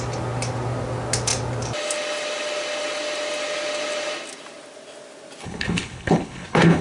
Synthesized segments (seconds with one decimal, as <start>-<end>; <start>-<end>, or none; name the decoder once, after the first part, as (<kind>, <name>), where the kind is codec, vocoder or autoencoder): 5.4-6.8 (codec, HILCodec)

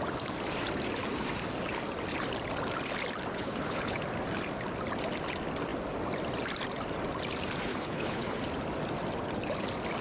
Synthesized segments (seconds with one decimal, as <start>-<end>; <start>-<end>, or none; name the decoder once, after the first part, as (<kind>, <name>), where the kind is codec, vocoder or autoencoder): 3.3-4.0 (codec, HILCodec); 7.7-8.4

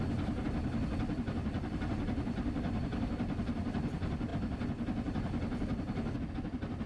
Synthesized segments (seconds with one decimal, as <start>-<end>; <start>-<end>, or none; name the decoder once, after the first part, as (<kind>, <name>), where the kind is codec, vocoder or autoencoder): none